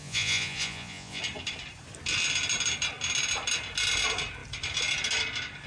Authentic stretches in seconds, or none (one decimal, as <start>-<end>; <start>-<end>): 1.2-5.7